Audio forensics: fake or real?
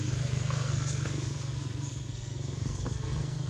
fake